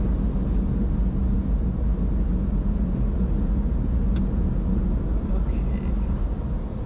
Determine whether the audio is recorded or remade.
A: recorded